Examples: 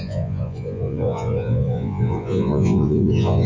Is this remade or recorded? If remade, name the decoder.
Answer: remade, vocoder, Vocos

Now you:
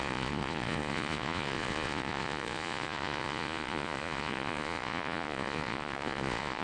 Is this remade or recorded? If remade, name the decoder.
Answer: remade, vocoder, Vocos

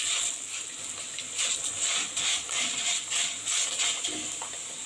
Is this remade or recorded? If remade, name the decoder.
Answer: recorded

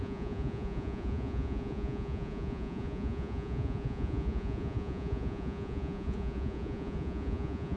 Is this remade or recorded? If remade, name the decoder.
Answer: remade, vocoder, Vocos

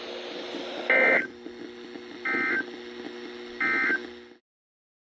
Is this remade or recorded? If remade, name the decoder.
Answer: recorded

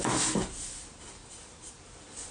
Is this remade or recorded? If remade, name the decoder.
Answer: recorded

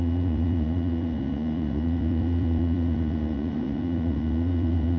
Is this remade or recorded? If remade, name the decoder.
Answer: remade, vocoder, Vocos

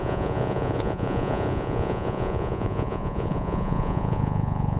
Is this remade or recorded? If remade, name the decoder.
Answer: remade, vocoder, Vocos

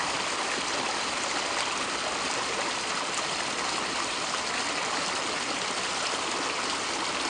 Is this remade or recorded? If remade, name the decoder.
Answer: recorded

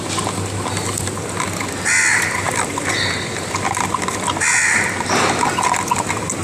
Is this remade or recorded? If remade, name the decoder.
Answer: recorded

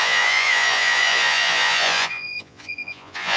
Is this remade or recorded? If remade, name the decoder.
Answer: remade, vocoder, Vocos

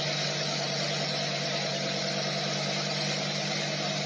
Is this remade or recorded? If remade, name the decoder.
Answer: recorded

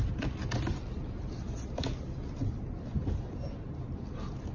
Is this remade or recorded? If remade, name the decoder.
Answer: recorded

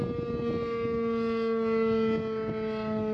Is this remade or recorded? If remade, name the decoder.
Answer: recorded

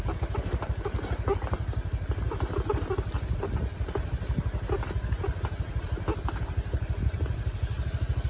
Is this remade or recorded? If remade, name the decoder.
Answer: recorded